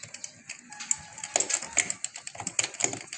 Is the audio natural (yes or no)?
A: yes